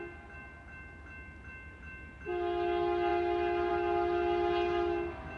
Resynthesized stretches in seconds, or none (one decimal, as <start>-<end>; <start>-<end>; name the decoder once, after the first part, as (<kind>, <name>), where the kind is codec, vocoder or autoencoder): none